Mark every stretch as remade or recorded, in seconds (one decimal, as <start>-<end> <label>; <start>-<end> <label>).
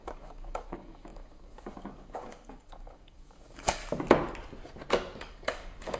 0.0-3.8 remade; 3.8-5.2 recorded; 5.2-6.0 remade